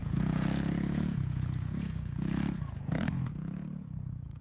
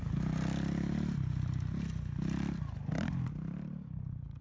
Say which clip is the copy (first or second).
first